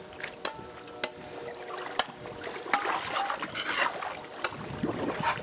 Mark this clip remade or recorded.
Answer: recorded